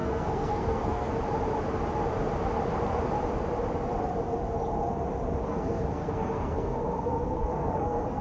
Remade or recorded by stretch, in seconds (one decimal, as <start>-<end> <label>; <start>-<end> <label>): 0.0-1.2 remade; 1.2-5.4 recorded; 5.4-8.2 remade